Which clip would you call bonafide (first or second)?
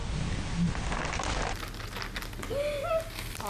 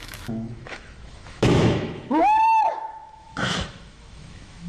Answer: first